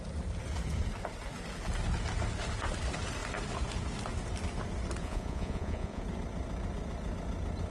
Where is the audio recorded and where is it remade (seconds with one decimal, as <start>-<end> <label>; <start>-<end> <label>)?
0.0-5.0 recorded; 5.0-6.0 remade; 6.0-7.7 recorded